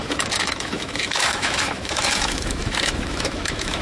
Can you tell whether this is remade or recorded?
remade